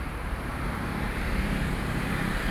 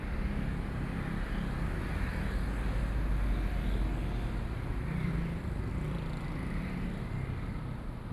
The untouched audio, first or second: second